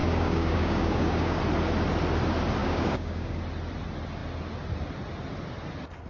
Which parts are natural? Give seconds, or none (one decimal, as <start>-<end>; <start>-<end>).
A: 1.4-2.6; 3.4-6.1